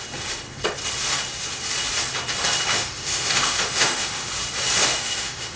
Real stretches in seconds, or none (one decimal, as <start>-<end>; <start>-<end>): 0.0-2.7; 4.3-4.9